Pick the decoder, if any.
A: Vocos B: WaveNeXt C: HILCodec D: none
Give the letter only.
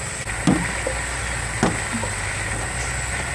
D